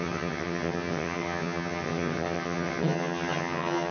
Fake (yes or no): yes